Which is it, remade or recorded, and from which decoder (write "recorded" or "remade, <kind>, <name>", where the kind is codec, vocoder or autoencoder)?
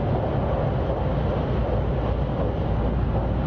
recorded